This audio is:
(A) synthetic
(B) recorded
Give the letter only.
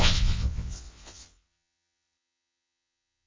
A